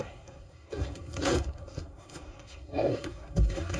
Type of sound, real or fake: fake